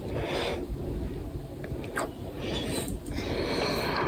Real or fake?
real